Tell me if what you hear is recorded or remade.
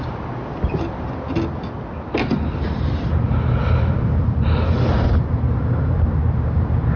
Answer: recorded